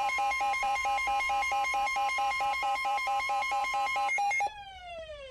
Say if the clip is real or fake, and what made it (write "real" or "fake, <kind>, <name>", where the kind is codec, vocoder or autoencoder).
fake, vocoder, BigVGAN v2